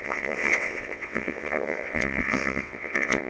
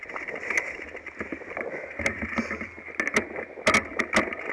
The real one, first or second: second